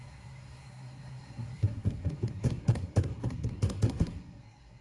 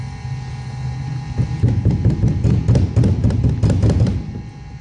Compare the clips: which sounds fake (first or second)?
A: first